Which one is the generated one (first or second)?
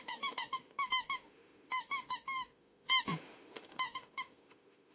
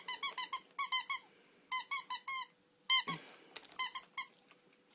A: first